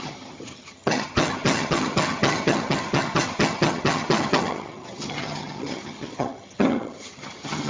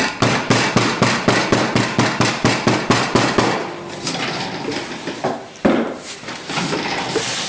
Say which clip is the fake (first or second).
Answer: first